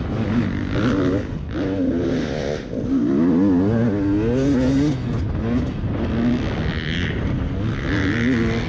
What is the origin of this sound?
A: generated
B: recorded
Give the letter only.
B